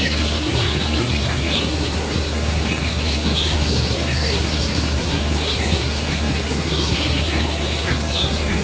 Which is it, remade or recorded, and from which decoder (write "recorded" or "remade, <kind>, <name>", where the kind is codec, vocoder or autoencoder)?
remade, codec, SNAC